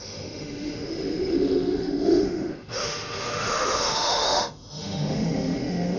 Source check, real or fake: fake